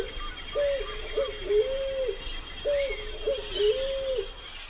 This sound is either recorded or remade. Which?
recorded